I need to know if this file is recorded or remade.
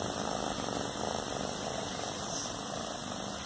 recorded